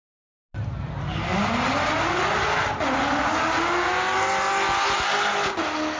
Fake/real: real